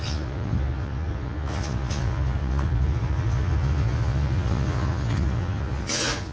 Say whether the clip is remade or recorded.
remade